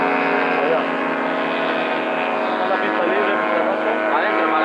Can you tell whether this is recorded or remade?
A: recorded